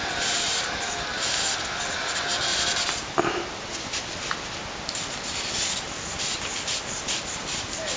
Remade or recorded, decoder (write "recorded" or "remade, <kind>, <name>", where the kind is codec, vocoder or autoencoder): recorded